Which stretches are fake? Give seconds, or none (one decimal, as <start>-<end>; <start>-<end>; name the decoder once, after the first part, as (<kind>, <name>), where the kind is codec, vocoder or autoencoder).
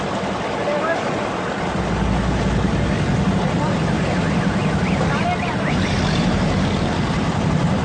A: none